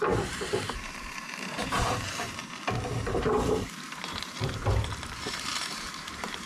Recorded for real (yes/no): no